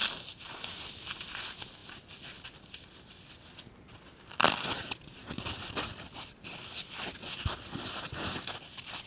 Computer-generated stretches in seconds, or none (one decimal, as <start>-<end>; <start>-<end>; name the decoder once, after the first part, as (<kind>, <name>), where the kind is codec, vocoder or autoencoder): 0.0-0.8 (vocoder, BigVGAN v2)